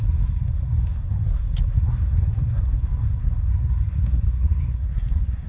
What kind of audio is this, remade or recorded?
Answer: remade